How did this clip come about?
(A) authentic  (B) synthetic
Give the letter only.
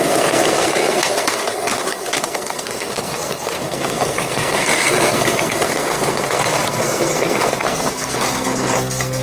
B